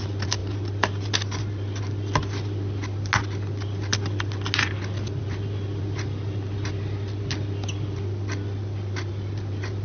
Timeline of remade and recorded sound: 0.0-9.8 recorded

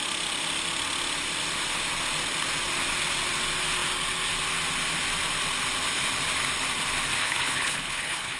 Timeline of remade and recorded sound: 0.0-7.2 recorded; 7.2-8.4 remade

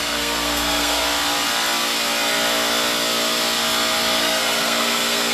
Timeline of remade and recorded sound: 0.0-1.0 remade; 1.0-4.2 recorded; 4.2-5.3 remade

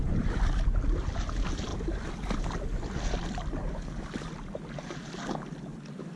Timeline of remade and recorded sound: 0.0-6.2 recorded

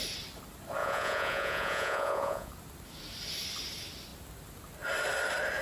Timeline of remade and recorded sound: 0.0-0.8 recorded; 0.8-2.5 remade; 2.5-5.6 recorded

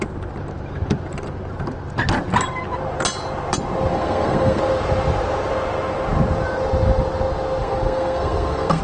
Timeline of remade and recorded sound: 0.0-3.9 recorded; 3.9-4.6 remade; 4.6-7.6 recorded; 7.6-8.8 remade